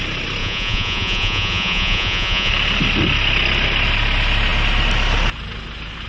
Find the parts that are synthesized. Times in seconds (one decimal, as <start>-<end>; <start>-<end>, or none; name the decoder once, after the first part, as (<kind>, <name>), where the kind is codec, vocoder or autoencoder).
0.4-2.5 (vocoder, Vocos)